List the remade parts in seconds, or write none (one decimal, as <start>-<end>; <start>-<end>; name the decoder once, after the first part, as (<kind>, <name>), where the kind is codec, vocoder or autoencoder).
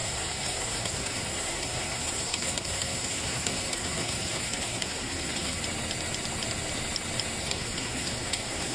0.0-5.6 (codec, SNAC); 7.4-8.7